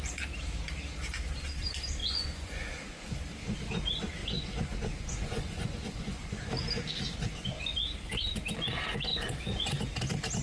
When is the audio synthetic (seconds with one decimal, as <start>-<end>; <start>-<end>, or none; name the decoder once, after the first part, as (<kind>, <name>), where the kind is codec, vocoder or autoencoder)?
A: 2.0-3.1 (vocoder, Vocos); 4.2-6.5; 9.1-9.8